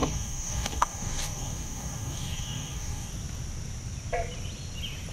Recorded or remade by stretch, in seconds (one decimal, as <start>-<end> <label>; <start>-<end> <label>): 0.0-3.1 remade; 3.1-5.1 recorded